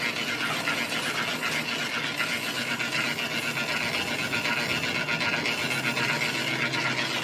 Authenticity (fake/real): real